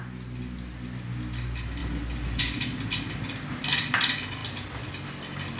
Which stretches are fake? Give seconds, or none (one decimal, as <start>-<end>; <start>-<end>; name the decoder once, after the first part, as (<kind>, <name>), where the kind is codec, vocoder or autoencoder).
none